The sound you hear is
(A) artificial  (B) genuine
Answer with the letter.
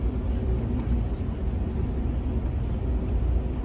B